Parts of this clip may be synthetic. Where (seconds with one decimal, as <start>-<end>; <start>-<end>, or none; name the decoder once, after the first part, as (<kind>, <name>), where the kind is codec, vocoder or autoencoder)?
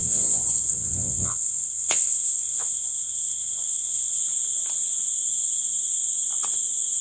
0.0-4.2 (vocoder, WaveNeXt)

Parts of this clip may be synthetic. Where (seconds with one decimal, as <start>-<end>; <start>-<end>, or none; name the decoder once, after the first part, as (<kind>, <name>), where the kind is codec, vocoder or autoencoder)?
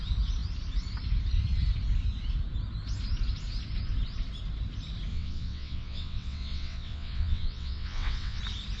5.1-8.4 (vocoder, WaveNeXt)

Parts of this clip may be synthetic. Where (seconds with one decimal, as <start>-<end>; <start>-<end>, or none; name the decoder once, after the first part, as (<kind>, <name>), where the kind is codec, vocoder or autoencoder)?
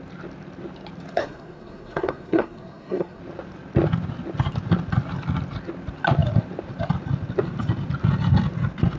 1.2-3.2 (codec, SNAC)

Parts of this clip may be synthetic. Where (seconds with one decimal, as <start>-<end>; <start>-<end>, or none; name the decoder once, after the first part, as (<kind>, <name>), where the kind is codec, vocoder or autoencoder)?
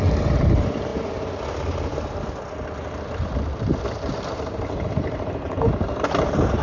none